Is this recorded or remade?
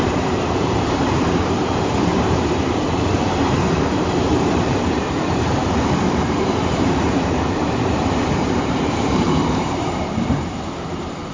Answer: remade